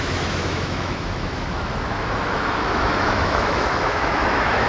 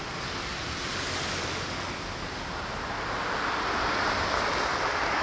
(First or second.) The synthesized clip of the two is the first